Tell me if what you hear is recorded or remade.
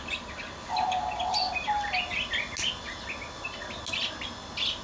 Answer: recorded